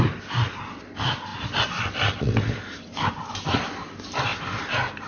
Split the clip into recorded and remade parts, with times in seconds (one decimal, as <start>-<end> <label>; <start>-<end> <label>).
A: 0.0-5.1 recorded